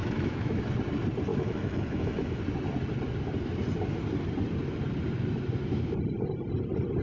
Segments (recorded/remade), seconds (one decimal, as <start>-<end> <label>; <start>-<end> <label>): 0.0-0.6 remade; 0.6-1.3 recorded; 1.3-2.4 remade; 2.4-7.0 recorded